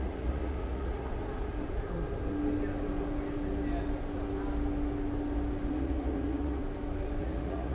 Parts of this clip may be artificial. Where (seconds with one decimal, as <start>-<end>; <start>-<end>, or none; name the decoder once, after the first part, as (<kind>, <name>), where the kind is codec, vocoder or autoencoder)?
0.0-1.1 (vocoder, Vocos); 5.7-6.6; 7.2-7.7